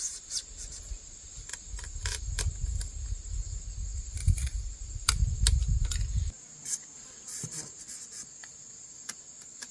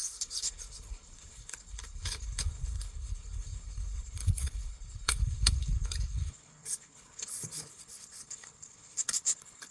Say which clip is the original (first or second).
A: first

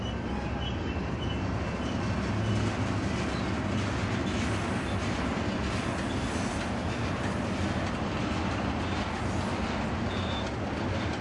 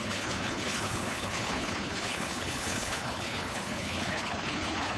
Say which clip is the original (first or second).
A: first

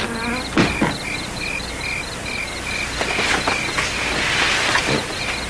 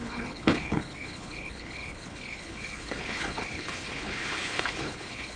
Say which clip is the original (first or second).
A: first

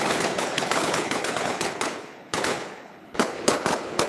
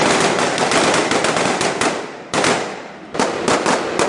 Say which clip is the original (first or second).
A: second